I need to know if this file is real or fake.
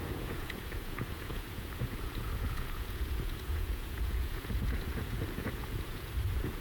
fake